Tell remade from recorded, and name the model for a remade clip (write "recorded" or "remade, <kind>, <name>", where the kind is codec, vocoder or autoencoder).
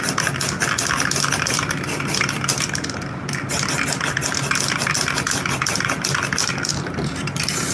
recorded